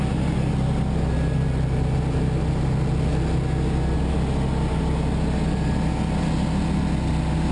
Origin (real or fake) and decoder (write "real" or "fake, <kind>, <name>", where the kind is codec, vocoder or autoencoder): real